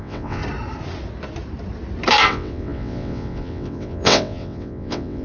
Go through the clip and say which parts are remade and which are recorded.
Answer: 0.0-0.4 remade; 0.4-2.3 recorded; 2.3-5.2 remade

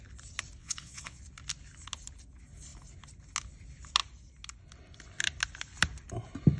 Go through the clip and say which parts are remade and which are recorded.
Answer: 0.0-0.6 recorded; 0.6-1.2 remade; 1.2-6.6 recorded